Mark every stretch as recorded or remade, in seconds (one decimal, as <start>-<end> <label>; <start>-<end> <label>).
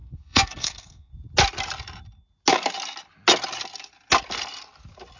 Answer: 0.0-1.1 remade; 1.1-5.2 recorded